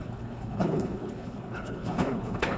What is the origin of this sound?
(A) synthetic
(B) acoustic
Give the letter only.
A